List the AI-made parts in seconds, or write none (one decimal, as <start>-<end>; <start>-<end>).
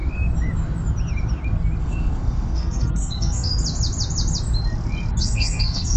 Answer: 1.8-3.5; 5.2-6.0